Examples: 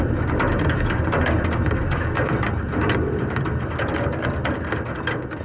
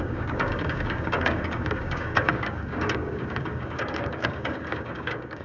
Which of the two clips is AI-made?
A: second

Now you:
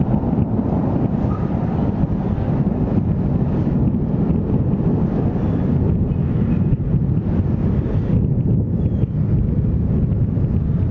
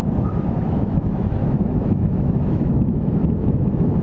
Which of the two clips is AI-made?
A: second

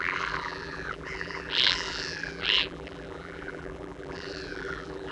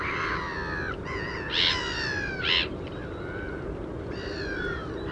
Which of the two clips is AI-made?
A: first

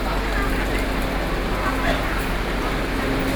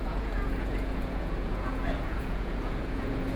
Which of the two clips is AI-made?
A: second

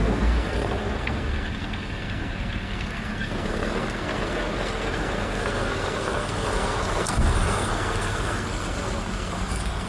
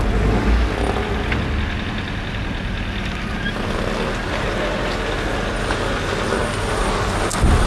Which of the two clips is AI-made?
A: first